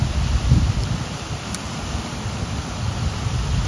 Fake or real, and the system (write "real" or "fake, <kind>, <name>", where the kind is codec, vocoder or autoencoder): fake, vocoder, BigVGAN v2